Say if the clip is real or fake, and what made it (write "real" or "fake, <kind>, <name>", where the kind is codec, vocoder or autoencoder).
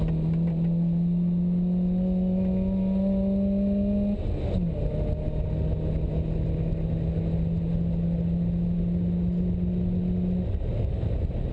real